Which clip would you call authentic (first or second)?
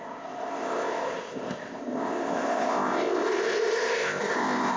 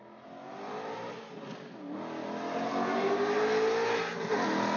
second